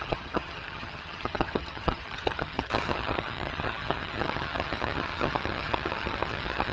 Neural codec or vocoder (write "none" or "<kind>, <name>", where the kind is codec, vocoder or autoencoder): vocoder, HiFi-GAN